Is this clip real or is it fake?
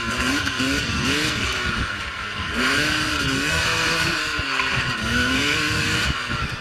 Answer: fake